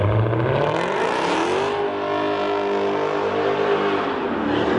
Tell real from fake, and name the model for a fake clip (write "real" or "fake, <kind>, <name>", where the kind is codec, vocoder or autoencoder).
real